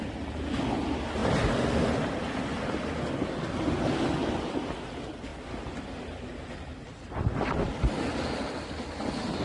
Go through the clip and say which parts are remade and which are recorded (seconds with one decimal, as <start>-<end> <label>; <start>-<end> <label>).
0.0-9.4 recorded